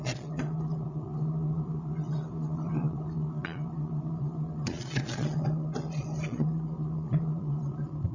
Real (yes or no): no